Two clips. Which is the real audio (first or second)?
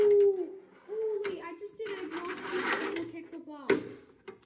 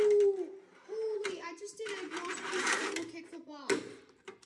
first